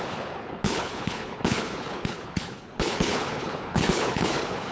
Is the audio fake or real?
fake